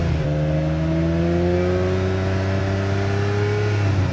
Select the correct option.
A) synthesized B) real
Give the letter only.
B